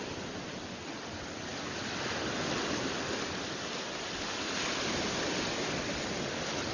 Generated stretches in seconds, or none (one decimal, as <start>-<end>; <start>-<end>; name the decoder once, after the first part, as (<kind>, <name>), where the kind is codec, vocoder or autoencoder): none